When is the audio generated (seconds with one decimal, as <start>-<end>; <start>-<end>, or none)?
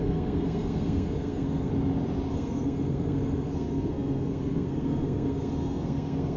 0.0-1.7; 2.3-6.4